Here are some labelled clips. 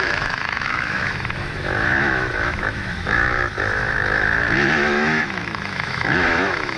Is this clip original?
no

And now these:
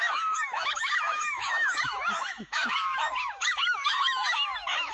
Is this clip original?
no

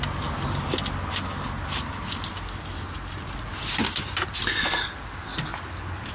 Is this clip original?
yes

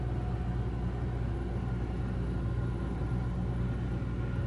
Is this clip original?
yes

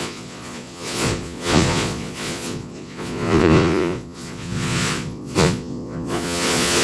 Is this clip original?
no